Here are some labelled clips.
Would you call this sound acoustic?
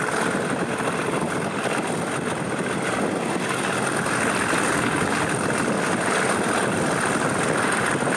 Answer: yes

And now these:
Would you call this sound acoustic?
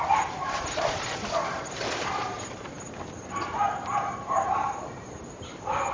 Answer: no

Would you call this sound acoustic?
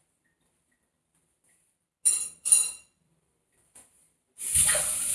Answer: yes